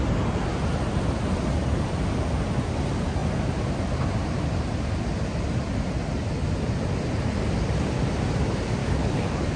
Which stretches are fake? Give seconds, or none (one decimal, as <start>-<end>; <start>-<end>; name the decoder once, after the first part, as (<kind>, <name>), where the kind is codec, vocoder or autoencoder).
8.8-9.6 (codec, DAC)